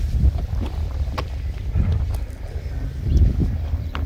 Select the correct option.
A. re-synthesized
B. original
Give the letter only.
B